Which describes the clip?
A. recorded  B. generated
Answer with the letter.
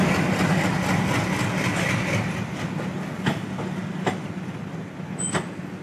A